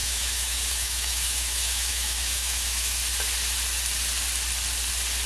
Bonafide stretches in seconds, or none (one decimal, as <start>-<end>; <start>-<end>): 3.0-5.3